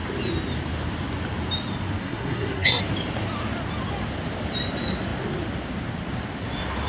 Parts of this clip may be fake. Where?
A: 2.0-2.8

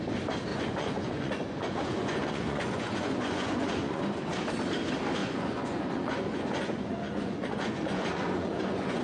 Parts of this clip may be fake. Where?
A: 0.5-4.0; 5.2-9.0

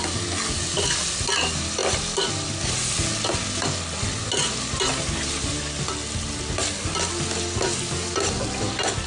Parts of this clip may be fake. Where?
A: none